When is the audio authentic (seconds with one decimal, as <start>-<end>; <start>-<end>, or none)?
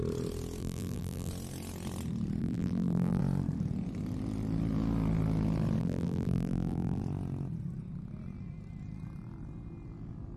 0.0-0.6; 1.3-2.4; 3.2-5.8; 7.0-10.4